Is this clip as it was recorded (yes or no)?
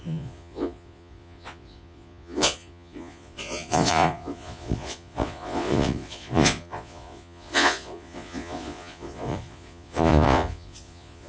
no